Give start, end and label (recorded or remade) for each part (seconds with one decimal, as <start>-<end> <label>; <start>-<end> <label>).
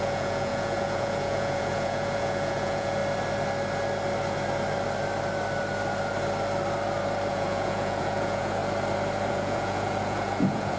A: 0.0-3.0 remade; 3.0-7.3 recorded; 7.3-8.6 remade; 8.6-9.3 recorded; 9.3-10.8 remade